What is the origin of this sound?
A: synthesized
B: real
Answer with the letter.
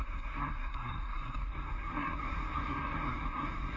A